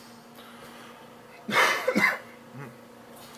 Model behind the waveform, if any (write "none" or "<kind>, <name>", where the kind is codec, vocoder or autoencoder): none